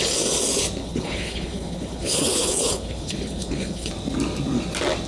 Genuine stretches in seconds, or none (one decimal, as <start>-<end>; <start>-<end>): 0.0-0.8; 3.9-5.1